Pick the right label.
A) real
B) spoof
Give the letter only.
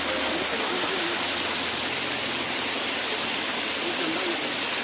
A